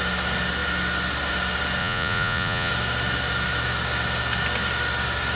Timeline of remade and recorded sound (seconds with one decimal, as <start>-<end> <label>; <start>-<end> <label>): 0.0-1.8 recorded; 1.8-2.7 remade; 2.7-5.4 recorded

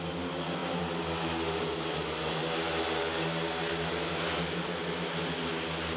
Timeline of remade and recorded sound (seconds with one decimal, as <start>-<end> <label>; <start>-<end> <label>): 0.0-6.0 recorded

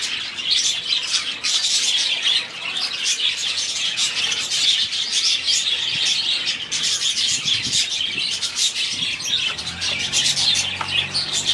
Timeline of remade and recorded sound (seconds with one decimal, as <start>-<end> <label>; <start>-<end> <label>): 0.0-3.4 recorded; 3.4-4.2 remade; 4.2-11.5 recorded

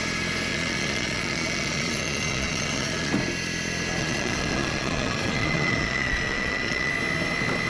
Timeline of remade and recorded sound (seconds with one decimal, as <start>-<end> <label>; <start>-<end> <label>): 0.0-0.5 recorded; 0.5-3.1 remade; 3.1-4.0 recorded; 4.0-6.9 remade; 6.9-7.7 recorded

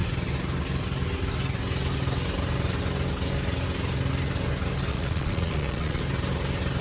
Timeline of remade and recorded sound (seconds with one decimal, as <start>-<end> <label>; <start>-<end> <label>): 0.0-4.9 recorded; 4.9-6.0 remade; 6.0-6.8 recorded

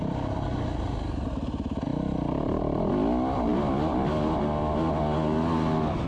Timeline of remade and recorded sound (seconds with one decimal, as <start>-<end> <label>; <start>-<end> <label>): 0.0-6.1 recorded